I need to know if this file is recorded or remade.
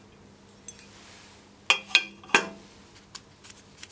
recorded